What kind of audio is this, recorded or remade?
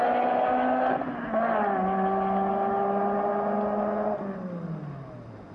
recorded